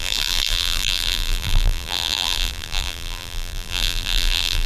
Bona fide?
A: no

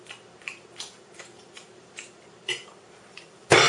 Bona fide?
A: no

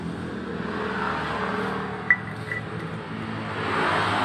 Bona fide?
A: yes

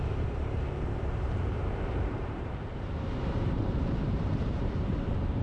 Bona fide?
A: no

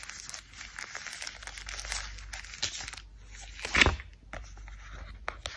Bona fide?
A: yes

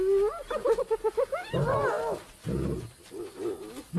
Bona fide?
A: yes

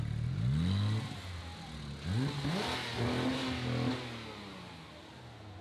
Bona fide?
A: yes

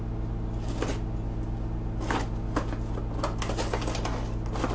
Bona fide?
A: yes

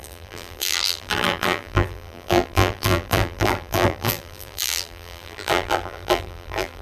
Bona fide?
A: no